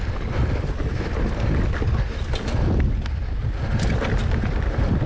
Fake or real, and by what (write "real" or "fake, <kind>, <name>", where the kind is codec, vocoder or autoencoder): real